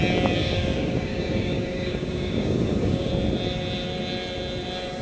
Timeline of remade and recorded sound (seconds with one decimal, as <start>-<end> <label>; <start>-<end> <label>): 0.0-0.4 recorded; 0.4-3.1 remade; 3.1-5.0 recorded